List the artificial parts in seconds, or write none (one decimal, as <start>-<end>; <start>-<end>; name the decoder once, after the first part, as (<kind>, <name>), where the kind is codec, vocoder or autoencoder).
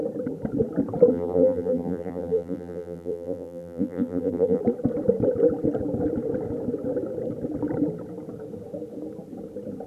1.1-4.6 (vocoder, BigVGAN v2)